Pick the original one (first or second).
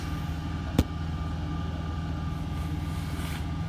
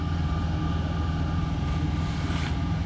first